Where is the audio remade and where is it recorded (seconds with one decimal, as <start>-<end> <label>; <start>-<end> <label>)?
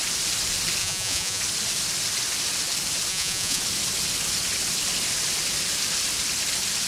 0.0-0.8 recorded; 0.8-1.4 remade; 1.4-3.1 recorded; 3.1-3.6 remade; 3.6-6.9 recorded